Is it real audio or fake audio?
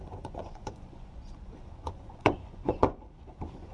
fake